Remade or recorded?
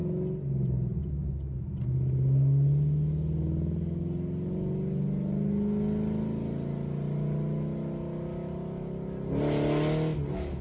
recorded